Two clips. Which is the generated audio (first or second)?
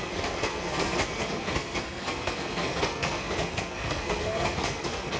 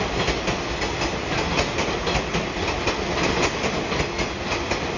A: first